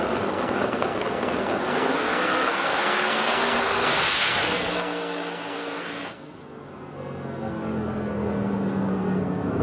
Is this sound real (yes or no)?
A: no